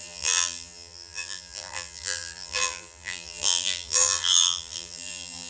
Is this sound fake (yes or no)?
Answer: yes